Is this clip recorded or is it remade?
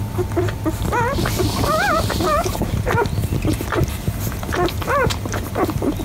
recorded